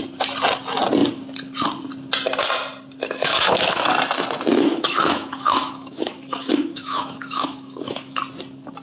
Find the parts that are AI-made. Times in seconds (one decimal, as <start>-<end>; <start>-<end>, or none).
3.2-3.9; 4.5-8.2